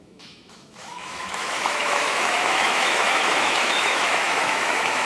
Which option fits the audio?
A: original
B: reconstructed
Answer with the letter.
B